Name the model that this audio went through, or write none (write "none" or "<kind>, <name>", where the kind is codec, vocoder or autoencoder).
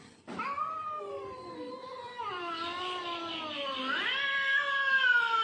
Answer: none